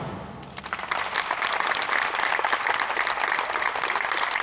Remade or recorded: recorded